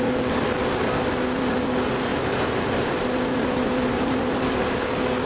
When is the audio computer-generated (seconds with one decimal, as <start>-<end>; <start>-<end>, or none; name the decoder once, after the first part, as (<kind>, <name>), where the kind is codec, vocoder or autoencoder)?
2.1-4.6 (vocoder, BigVGAN v2)